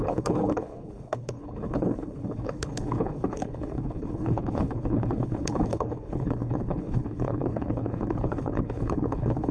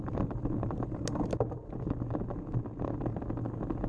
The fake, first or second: first